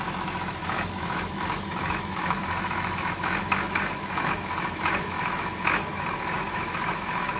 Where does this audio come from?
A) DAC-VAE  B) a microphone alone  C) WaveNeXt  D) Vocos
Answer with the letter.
A